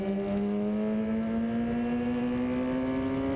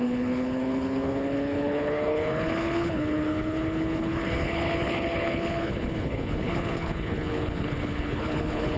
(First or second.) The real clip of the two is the first